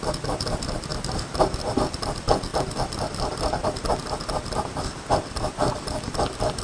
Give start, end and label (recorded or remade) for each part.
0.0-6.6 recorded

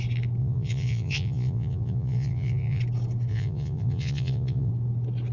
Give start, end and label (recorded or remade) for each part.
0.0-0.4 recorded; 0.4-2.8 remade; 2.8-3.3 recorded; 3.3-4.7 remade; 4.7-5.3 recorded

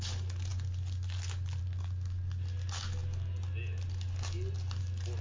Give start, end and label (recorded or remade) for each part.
0.0-5.2 recorded

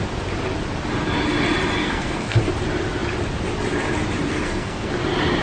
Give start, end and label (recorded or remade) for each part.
0.0-1.8 recorded; 1.8-2.4 remade; 2.4-4.3 recorded; 4.3-4.9 remade; 4.9-5.4 recorded